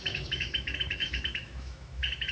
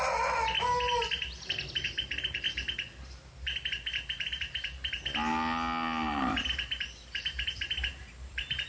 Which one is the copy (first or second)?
first